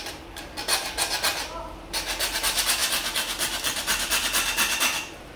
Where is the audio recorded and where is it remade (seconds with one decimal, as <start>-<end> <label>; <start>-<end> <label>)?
0.0-5.4 recorded